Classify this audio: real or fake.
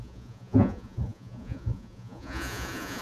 fake